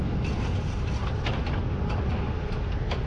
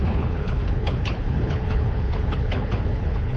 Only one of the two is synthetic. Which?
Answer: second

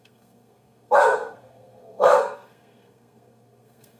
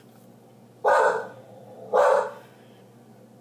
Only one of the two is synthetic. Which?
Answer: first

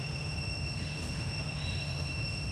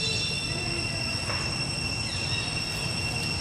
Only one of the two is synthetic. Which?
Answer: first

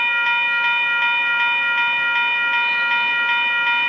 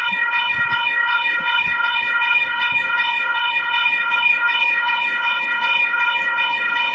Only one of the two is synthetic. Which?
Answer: second